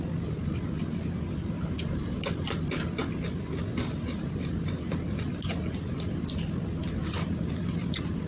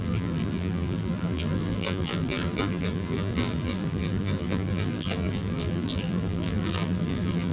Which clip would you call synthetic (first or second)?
second